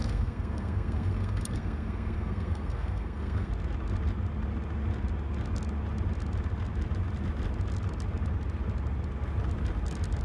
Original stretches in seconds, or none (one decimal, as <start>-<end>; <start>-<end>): 3.5-10.2